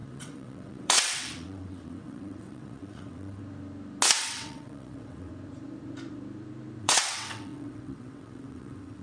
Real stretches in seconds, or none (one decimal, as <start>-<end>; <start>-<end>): 3.4-4.2; 5.3-6.8